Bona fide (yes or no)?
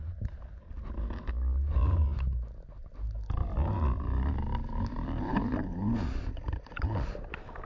yes